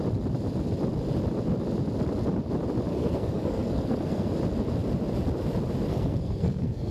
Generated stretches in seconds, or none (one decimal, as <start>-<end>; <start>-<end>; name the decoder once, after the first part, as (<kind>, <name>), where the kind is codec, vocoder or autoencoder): 2.9-4.3 (codec, SNAC); 5.9-6.9